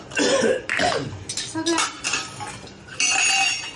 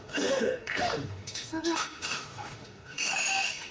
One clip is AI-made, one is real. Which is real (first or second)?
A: first